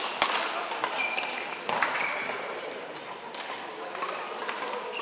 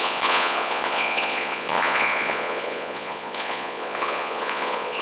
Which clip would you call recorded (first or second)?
first